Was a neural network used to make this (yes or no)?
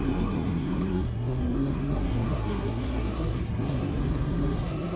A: yes